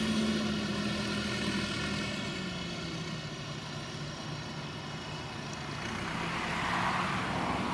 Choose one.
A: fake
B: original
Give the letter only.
B